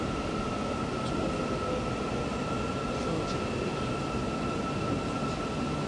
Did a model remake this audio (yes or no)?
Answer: no